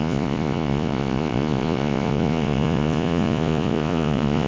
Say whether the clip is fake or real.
fake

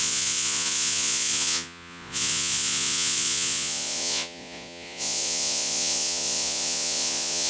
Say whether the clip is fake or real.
fake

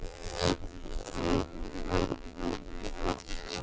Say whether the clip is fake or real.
fake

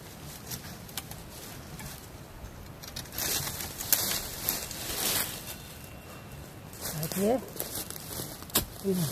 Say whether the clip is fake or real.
real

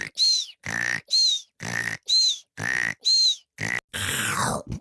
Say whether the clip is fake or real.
real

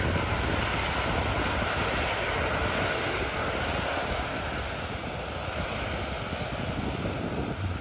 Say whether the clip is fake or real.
real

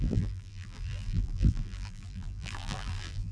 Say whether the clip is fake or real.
fake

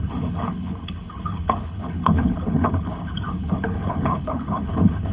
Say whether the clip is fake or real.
fake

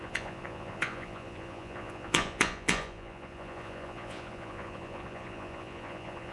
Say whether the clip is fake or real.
fake